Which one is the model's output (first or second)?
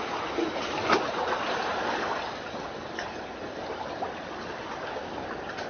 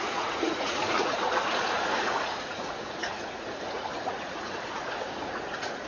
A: second